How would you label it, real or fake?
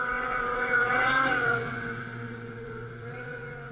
fake